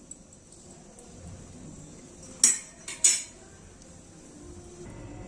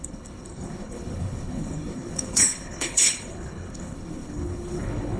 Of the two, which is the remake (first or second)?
second